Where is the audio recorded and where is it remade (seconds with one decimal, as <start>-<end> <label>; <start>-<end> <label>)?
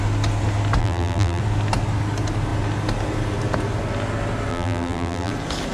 0.0-0.8 recorded; 0.8-1.4 remade; 1.4-4.5 recorded; 4.5-5.3 remade; 5.3-5.7 recorded